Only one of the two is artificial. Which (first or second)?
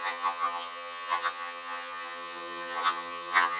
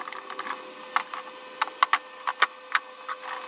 first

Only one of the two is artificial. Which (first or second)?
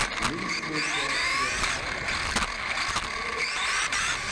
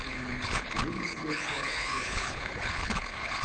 second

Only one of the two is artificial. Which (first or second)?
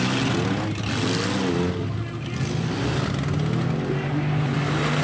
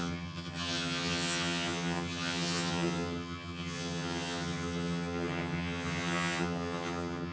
second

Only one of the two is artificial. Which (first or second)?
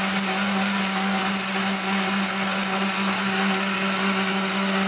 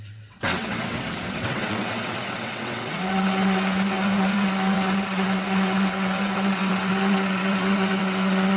second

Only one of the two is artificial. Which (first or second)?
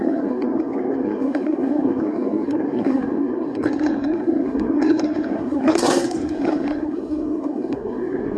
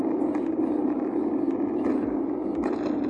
first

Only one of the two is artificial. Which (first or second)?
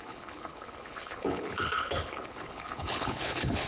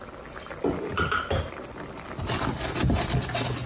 first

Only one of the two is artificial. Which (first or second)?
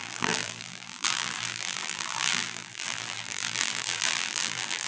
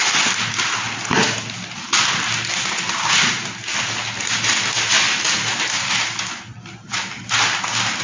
first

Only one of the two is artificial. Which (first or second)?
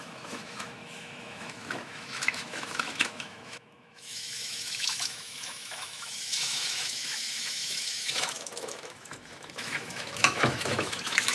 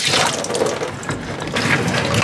first